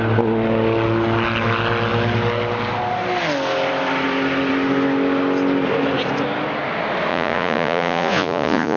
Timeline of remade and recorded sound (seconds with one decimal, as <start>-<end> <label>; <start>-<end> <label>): 0.0-7.1 recorded; 7.1-8.8 remade